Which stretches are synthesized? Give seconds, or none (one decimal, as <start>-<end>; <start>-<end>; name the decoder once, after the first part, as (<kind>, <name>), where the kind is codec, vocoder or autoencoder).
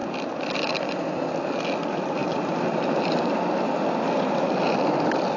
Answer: 2.2-3.3 (vocoder, BigVGAN v2)